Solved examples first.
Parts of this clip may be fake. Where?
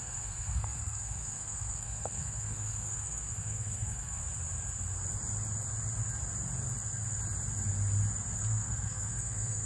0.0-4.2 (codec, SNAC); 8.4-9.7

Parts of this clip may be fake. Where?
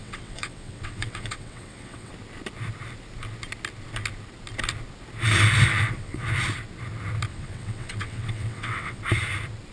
0.0-2.1 (vocoder, WaveNeXt); 5.7-6.3; 7.3-9.0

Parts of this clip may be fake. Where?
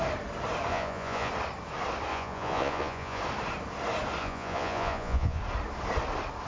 0.7-1.3 (vocoder, Vocos); 2.1-3.2; 4.2-5.4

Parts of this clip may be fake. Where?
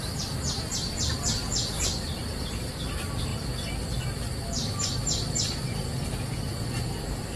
0.0-1.4 (vocoder, BigVGAN v2); 2.5-3.3; 6.7-7.4